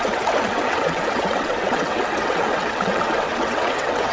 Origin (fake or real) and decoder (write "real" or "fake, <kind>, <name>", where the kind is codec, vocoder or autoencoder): fake, vocoder, WaveNeXt